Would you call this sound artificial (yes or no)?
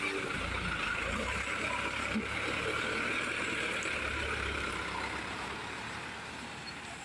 yes